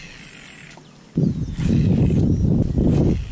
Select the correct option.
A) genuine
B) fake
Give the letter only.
A